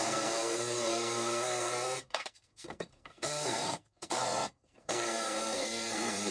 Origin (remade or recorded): remade